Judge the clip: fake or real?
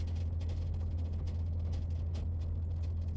real